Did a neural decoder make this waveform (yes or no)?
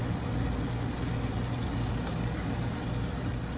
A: no